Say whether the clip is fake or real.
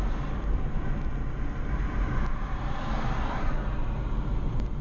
real